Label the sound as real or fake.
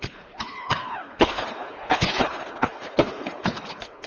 fake